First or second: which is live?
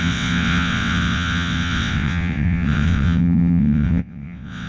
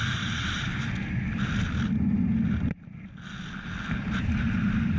second